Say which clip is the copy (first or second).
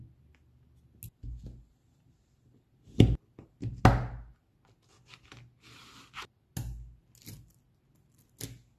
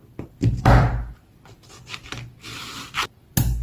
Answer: second